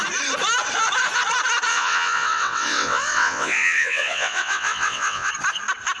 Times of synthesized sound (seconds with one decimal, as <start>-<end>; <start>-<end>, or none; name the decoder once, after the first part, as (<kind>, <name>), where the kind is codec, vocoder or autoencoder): 1.7-5.3 (vocoder, WaveNeXt)